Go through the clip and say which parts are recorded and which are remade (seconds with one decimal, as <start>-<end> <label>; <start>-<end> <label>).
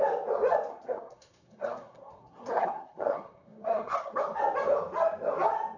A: 0.0-0.7 recorded; 0.7-4.2 remade; 4.2-5.8 recorded